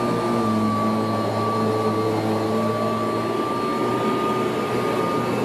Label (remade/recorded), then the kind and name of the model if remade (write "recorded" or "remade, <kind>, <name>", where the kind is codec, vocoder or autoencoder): recorded